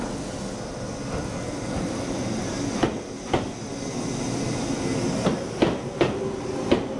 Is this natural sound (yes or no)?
yes